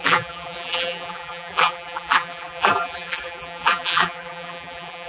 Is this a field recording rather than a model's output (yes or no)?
no